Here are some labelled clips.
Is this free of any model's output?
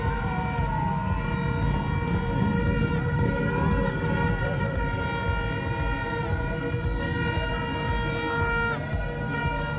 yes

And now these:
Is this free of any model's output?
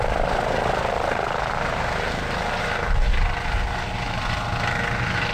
yes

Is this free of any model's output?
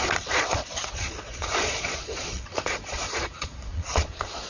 no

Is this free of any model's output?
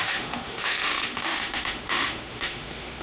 no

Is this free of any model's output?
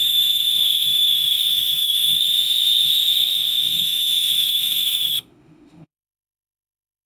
no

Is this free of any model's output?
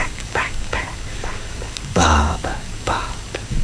no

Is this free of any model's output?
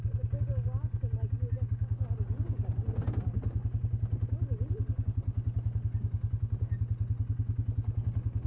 yes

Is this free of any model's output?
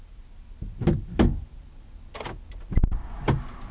yes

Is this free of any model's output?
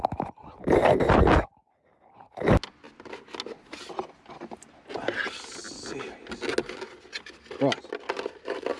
yes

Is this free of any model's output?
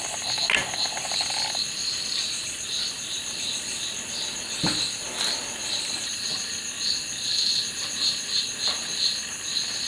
yes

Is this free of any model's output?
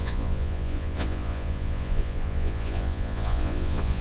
no